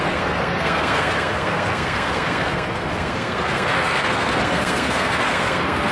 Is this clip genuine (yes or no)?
no